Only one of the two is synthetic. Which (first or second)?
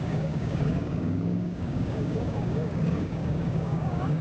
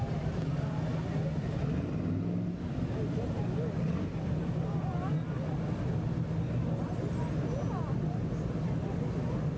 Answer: first